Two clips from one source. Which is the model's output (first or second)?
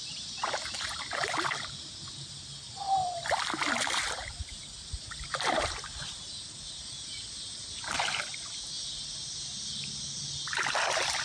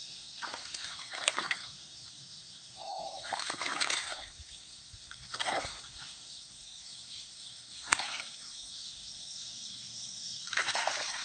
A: second